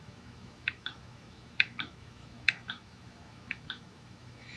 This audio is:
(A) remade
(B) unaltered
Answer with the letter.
A